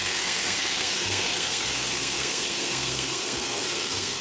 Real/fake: fake